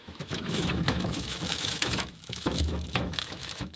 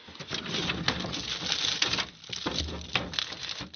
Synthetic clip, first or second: first